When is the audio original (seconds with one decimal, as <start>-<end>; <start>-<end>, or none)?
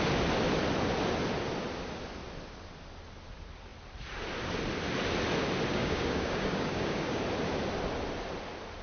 0.0-5.7; 7.2-8.8